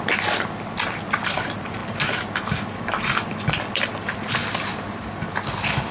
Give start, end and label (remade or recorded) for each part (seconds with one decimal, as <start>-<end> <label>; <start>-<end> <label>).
0.0-5.9 recorded